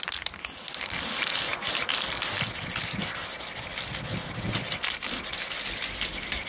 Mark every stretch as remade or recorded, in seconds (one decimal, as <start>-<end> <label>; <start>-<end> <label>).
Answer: 0.0-6.5 recorded